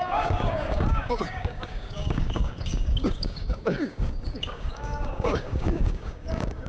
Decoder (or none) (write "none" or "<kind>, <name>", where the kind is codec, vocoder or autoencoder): codec, DAC